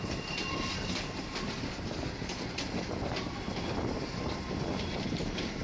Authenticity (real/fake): real